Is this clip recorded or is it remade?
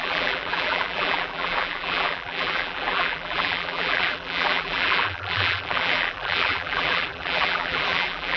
remade